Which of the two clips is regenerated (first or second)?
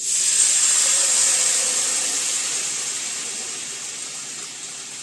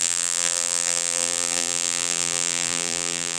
second